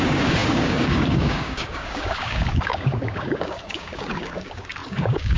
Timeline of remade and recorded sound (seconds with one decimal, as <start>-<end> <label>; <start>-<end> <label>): 0.0-5.4 remade